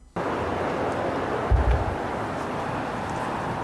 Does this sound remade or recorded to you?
recorded